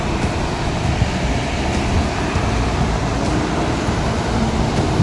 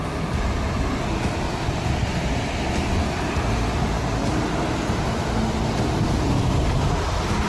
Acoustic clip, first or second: second